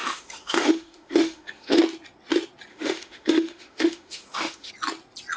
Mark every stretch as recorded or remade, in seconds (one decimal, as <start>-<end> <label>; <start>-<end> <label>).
0.0-1.8 remade; 1.8-2.7 recorded; 2.7-4.7 remade; 4.7-5.4 recorded